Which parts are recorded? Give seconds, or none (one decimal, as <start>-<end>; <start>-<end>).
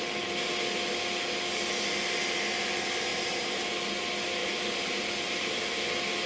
0.0-3.1; 3.6-4.4; 5.0-6.3